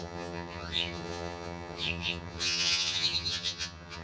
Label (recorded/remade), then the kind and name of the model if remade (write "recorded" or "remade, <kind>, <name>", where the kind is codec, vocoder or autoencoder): remade, vocoder, HiFi-GAN